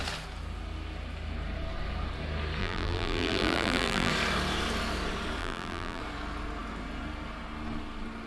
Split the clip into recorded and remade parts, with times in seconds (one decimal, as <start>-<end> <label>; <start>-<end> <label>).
0.0-2.6 recorded; 2.6-4.1 remade; 4.1-5.4 recorded; 5.4-6.0 remade; 6.0-8.3 recorded